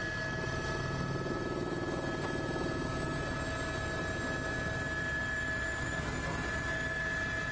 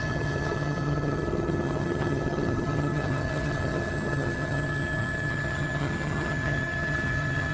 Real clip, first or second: first